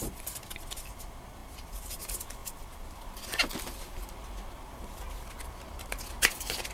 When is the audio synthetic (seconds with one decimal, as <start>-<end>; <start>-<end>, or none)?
1.4-2.0; 2.4-6.0